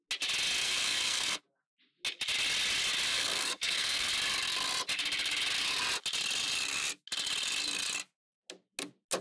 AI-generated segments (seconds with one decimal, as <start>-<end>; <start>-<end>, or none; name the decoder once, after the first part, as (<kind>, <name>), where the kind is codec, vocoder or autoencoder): 0.6-1.4 (codec, SNAC); 3.1-4.1